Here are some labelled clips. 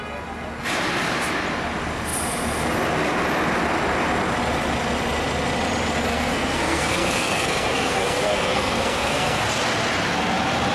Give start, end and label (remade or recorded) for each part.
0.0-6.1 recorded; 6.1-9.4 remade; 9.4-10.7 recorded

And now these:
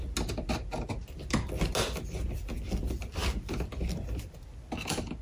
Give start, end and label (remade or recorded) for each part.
0.0-5.2 recorded

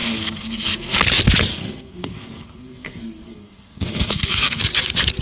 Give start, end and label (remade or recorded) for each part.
0.0-1.0 remade; 1.0-1.5 recorded; 1.5-4.6 remade; 4.6-5.2 recorded

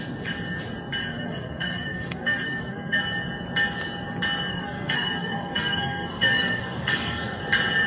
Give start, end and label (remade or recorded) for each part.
0.0-1.0 recorded; 1.0-3.0 remade; 3.0-4.5 recorded; 4.5-7.4 remade; 7.4-7.9 recorded

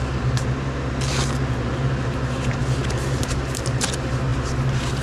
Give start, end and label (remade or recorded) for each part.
0.0-5.0 recorded

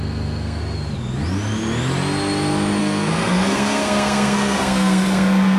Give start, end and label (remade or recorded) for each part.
0.0-0.6 remade; 0.6-2.8 recorded; 2.8-5.6 remade

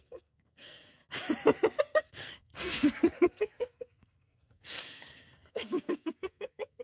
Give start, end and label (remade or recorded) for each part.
0.0-1.0 remade; 1.0-1.8 recorded; 1.8-6.8 remade